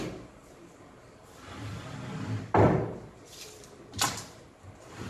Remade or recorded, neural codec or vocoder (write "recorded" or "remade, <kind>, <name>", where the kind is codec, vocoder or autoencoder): recorded